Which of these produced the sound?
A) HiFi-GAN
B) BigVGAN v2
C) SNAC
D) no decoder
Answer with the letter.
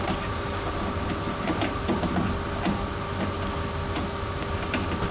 D